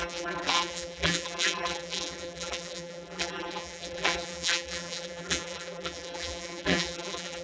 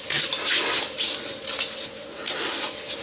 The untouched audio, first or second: second